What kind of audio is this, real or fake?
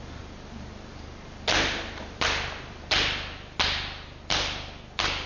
real